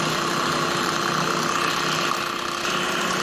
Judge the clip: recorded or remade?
recorded